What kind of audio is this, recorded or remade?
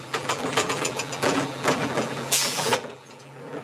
remade